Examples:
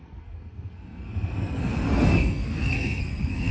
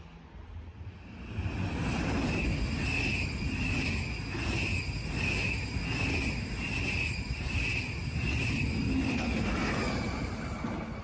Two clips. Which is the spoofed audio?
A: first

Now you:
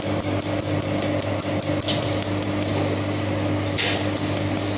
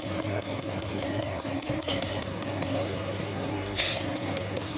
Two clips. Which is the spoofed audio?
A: second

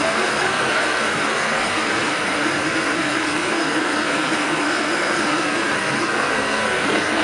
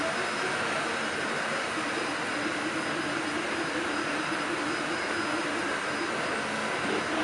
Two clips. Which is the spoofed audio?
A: first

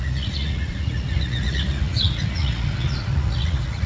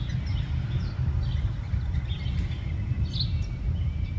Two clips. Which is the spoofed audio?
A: first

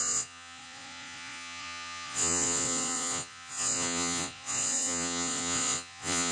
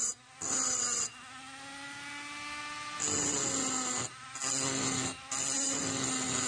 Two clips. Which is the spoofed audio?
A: first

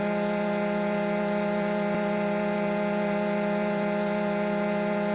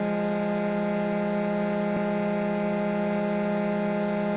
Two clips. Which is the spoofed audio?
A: first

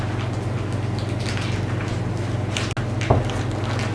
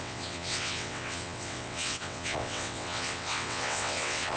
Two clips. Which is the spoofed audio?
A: second